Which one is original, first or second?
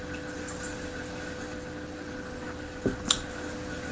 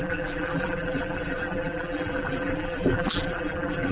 first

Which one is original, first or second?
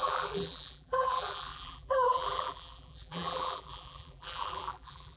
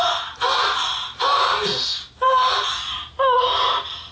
second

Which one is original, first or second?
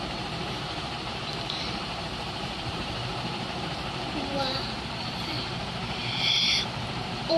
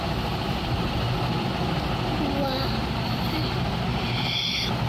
second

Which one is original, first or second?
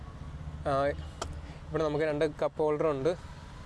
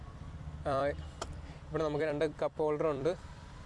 first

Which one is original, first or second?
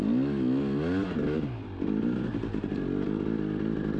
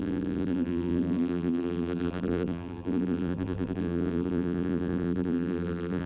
first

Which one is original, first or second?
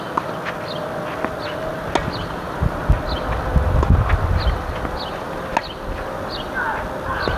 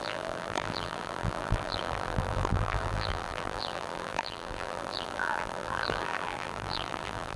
first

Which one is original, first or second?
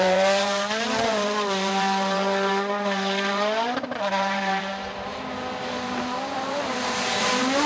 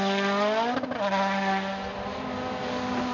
second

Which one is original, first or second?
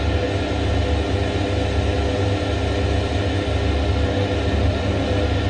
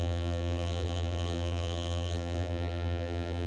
first